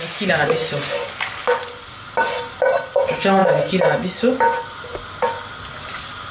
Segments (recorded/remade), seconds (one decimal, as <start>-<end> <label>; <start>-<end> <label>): 0.0-6.3 recorded